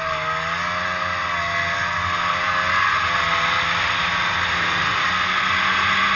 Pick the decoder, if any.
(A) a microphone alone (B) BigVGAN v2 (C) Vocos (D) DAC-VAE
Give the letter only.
A